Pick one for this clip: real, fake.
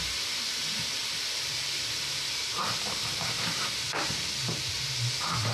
fake